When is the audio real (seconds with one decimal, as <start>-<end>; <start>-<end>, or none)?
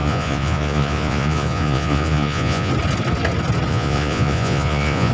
2.7-3.7